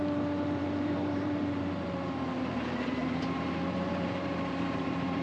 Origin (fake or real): fake